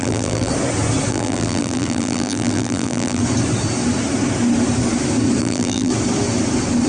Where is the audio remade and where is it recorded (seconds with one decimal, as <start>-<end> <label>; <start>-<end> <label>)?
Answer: 0.0-0.5 remade; 0.5-1.1 recorded; 1.1-3.2 remade; 3.2-5.4 recorded; 5.4-5.9 remade; 5.9-6.9 recorded